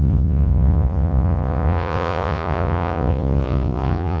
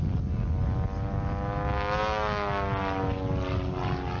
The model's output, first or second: first